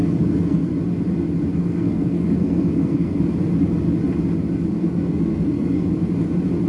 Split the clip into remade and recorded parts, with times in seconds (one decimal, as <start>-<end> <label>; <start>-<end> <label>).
0.0-0.7 remade; 0.7-1.5 recorded; 1.5-3.2 remade; 3.2-4.7 recorded; 4.7-5.9 remade; 5.9-6.7 recorded